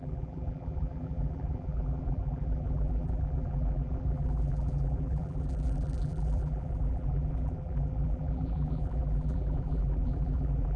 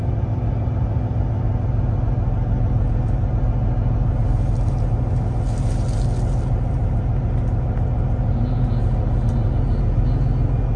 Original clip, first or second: second